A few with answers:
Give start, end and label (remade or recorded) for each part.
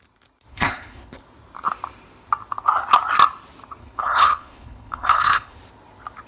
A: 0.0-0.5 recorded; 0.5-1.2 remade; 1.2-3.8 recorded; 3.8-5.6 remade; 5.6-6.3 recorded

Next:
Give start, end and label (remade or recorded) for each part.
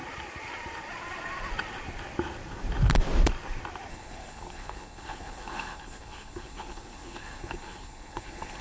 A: 0.0-3.9 recorded; 3.9-8.6 remade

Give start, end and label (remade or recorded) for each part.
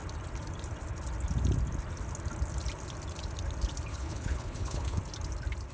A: 0.0-3.9 recorded; 3.9-5.0 remade; 5.0-5.7 recorded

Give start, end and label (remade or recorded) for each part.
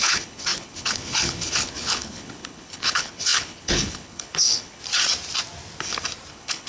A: 0.0-4.8 remade; 4.8-6.3 recorded; 6.3-6.7 remade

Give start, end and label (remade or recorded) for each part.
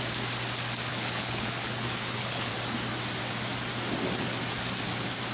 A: 0.0-0.9 recorded; 0.9-2.5 remade; 2.5-5.3 recorded